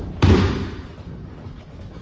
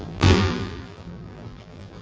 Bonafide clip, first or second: first